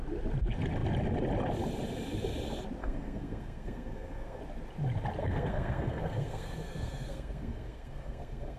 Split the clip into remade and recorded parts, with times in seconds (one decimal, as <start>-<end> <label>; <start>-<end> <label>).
0.0-2.8 recorded; 2.8-4.4 remade; 4.4-5.2 recorded; 5.2-8.6 remade